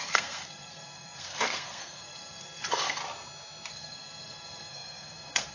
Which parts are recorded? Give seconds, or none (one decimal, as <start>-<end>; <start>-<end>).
3.0-3.7